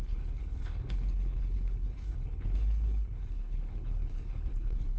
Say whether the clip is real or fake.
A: fake